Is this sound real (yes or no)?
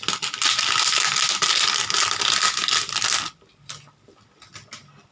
yes